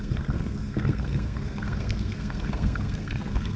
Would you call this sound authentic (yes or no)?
no